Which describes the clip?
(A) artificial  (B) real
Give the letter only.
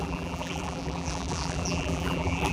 A